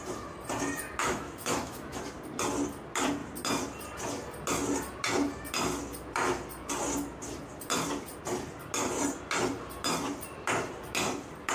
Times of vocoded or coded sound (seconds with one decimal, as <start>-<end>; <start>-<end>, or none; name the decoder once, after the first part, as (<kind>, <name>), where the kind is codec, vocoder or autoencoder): 1.0-2.0 (autoencoder, DAC-VAE)